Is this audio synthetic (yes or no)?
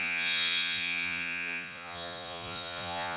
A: yes